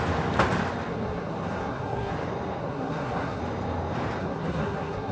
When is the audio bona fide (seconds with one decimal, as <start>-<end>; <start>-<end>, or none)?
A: 0.0-0.9; 2.1-2.6; 3.4-4.2